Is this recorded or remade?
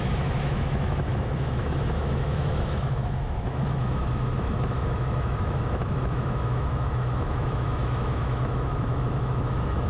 remade